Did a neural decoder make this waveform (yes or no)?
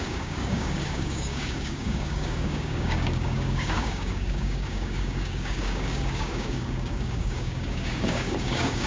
yes